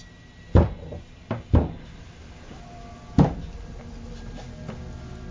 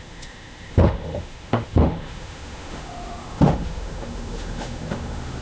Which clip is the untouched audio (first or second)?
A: first